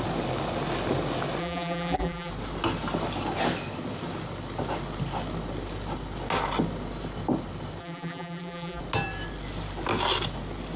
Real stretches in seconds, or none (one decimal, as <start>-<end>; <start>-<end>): 0.0-1.4; 2.3-7.8; 8.8-10.8